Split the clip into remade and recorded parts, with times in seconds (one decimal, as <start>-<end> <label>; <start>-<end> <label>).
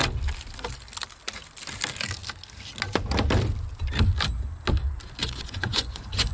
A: 0.0-5.2 recorded; 5.2-6.3 remade